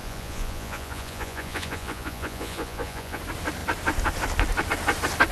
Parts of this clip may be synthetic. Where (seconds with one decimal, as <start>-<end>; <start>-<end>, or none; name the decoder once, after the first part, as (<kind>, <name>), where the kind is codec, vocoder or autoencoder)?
0.0-3.2 (vocoder, Vocos)